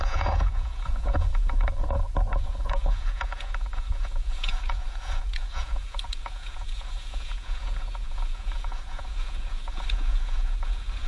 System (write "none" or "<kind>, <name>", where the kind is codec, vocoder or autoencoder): vocoder, Vocos